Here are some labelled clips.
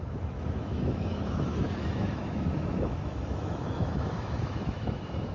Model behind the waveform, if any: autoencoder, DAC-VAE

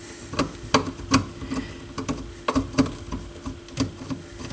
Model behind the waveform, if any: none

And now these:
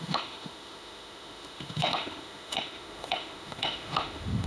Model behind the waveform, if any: autoencoder, DAC-VAE